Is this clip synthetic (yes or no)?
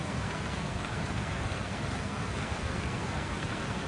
yes